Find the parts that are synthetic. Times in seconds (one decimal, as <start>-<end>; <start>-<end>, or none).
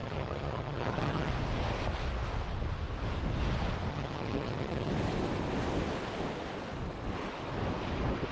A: 0.0-1.3; 3.9-4.9